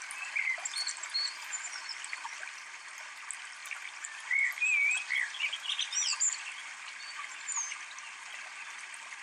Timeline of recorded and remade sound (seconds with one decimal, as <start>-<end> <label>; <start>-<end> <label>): 0.0-9.2 recorded